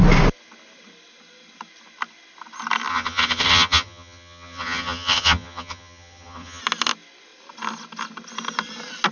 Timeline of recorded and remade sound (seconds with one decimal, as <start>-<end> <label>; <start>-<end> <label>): 0.0-2.9 recorded; 2.9-6.6 remade; 6.6-9.1 recorded